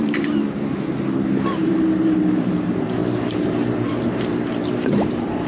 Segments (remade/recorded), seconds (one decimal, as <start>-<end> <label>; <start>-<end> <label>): 0.0-5.5 remade